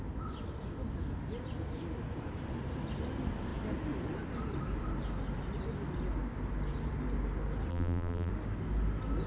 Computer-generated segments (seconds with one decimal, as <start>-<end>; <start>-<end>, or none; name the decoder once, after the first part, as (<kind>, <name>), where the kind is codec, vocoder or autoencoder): 7.7-8.3 (vocoder, BigVGAN v2)